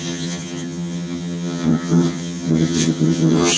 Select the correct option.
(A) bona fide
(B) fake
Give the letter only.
B